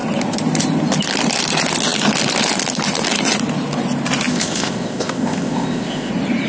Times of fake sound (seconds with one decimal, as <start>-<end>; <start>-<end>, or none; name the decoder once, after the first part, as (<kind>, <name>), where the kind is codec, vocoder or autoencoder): 4.3-6.1 (codec, ZipCodec)